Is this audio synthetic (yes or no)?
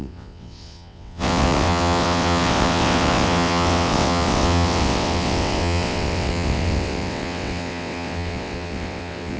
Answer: yes